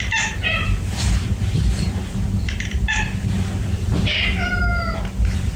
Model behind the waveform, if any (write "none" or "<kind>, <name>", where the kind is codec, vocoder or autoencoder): vocoder, BigVGAN v2